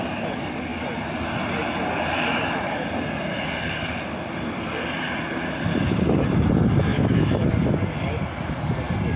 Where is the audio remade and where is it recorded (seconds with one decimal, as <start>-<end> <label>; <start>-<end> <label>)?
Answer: 0.0-6.9 recorded; 6.9-7.5 remade; 7.5-9.2 recorded